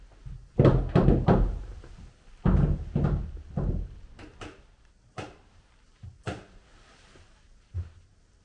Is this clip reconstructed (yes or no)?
no